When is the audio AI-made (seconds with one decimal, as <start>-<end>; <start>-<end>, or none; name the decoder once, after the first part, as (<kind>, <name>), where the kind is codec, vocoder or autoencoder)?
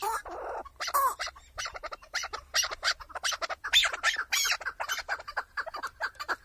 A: 0.0-0.6 (vocoder, BigVGAN v2); 1.6-2.2; 4.9-6.4